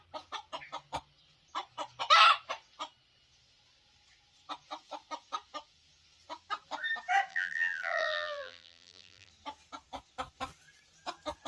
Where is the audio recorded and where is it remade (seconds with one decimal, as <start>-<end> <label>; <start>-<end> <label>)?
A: 0.0-7.3 recorded; 7.3-9.3 remade; 9.3-11.5 recorded